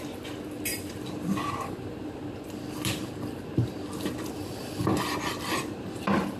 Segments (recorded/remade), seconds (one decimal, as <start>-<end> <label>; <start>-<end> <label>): 0.0-6.4 recorded